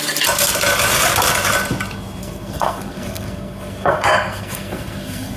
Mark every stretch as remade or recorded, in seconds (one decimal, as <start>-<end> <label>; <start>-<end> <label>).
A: 0.0-2.2 recorded; 2.2-5.4 remade